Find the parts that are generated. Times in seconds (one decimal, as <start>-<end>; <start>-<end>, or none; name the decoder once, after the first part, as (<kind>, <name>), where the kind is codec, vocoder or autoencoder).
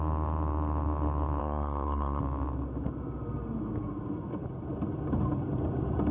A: 1.4-2.2 (codec, SNAC)